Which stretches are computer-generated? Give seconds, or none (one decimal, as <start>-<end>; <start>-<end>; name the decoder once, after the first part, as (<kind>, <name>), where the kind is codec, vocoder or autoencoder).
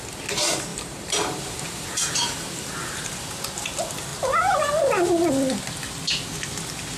0.7-3.3 (vocoder, BigVGAN v2)